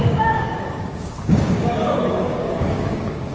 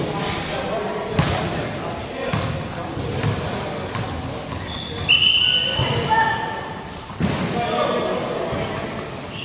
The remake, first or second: first